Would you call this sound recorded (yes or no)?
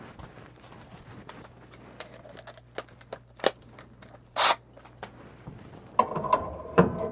yes